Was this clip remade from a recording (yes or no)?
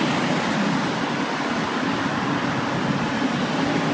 no